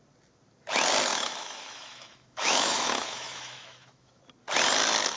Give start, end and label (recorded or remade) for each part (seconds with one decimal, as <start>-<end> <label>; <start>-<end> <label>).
0.0-1.1 recorded; 1.1-4.2 remade; 4.2-5.2 recorded